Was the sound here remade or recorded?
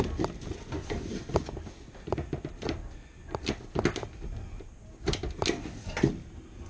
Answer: recorded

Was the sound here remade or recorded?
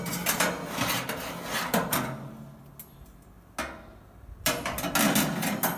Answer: recorded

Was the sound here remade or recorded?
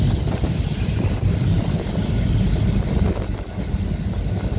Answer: recorded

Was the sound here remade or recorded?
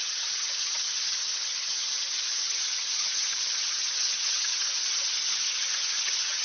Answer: remade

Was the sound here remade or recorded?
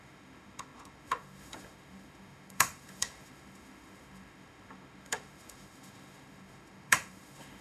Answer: remade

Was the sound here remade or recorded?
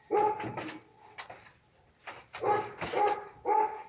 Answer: recorded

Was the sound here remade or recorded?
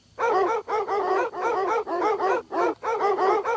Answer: recorded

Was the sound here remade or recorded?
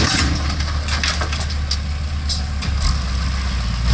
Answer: recorded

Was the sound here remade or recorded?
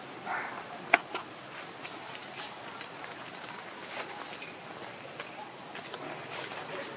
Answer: recorded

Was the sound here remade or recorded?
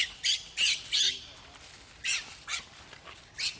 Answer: recorded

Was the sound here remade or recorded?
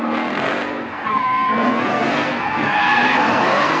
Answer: remade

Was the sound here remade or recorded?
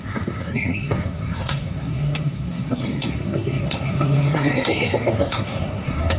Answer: remade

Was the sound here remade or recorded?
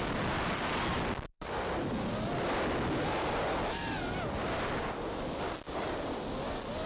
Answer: recorded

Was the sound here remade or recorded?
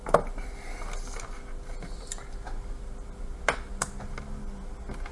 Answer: recorded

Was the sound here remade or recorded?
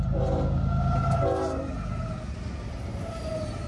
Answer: recorded